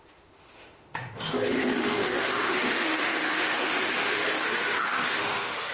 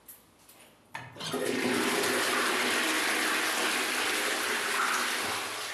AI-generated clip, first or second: first